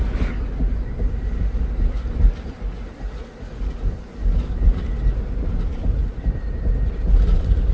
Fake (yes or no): no